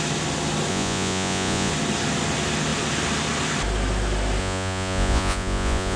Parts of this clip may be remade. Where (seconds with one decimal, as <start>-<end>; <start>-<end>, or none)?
0.7-1.7; 4.4-6.0